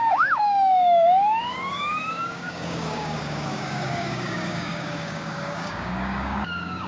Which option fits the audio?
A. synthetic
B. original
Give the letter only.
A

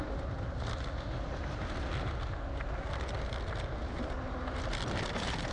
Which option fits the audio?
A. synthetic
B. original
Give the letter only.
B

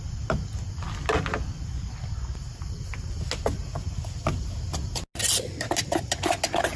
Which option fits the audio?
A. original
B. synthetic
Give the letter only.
A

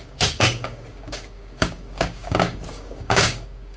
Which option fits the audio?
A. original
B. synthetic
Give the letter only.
B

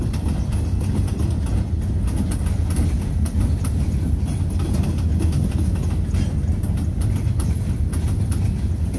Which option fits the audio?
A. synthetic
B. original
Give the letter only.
B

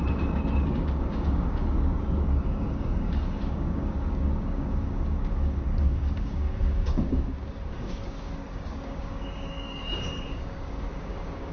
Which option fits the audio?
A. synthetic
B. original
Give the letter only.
A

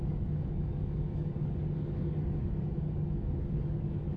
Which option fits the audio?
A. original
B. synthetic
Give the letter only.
B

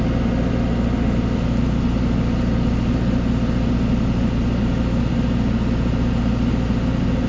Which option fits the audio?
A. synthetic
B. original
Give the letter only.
B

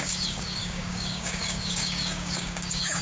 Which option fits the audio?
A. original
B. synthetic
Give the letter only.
B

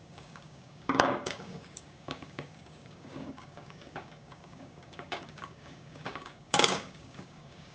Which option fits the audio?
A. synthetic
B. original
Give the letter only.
A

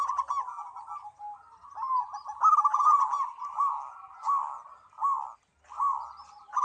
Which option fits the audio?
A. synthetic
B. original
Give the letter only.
B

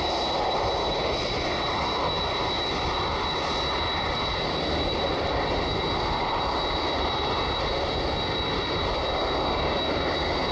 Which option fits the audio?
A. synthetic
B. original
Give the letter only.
B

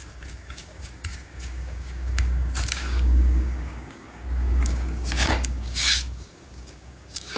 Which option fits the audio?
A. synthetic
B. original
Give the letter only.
A